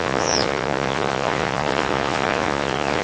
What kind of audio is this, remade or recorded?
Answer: remade